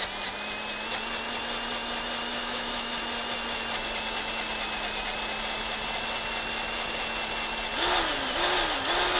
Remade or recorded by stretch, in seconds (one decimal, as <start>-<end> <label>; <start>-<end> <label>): 0.0-2.4 recorded; 2.4-3.0 remade; 3.0-9.2 recorded